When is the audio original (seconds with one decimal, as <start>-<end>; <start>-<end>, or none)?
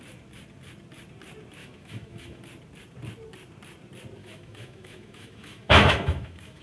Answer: 0.0-1.6; 2.4-4.2